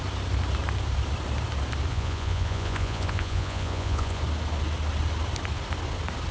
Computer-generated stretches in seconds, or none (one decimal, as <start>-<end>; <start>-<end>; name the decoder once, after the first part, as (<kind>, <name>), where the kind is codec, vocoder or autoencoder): 1.9-4.2 (vocoder, Vocos)